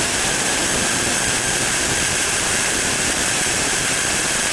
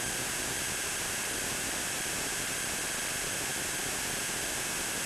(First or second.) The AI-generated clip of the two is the first